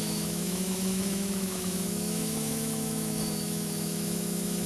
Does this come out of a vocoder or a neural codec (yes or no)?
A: yes